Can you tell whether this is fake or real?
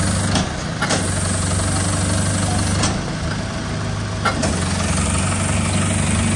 real